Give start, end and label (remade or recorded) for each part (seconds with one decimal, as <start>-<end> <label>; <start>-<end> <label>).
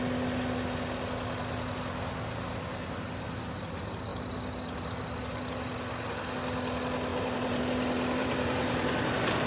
0.0-7.1 recorded; 7.1-7.6 remade; 7.6-8.2 recorded; 8.2-9.0 remade; 9.0-9.5 recorded